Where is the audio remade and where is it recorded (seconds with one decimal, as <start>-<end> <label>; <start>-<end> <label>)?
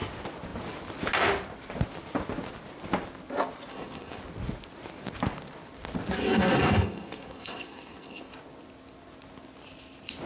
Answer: 0.0-3.7 recorded; 3.7-4.2 remade; 4.2-6.2 recorded; 6.2-8.3 remade; 8.3-10.3 recorded